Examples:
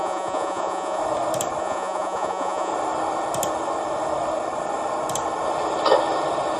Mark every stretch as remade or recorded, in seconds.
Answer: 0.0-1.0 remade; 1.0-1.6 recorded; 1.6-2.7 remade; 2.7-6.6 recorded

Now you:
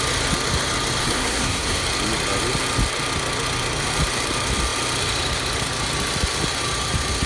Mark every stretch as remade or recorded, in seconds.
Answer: 0.0-1.0 recorded; 1.0-1.8 remade; 1.8-7.3 recorded

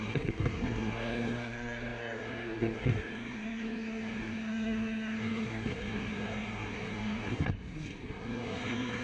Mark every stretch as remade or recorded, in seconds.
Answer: 0.0-9.0 remade